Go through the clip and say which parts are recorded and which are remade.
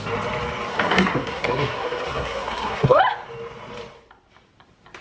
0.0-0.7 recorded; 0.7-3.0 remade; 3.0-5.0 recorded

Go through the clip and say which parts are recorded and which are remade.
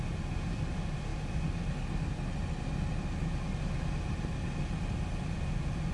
0.0-5.9 recorded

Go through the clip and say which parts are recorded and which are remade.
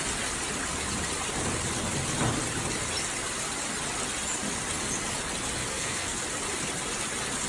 0.0-5.7 recorded; 5.7-6.2 remade; 6.2-7.5 recorded